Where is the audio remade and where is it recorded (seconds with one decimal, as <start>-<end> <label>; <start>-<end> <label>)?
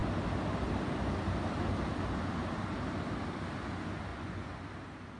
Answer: 0.0-4.1 recorded; 4.1-4.6 remade; 4.6-5.2 recorded